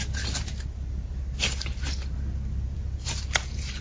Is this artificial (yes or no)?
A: no